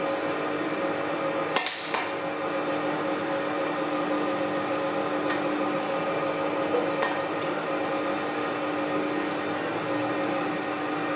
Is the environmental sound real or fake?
real